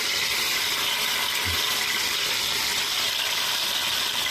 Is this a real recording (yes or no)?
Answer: yes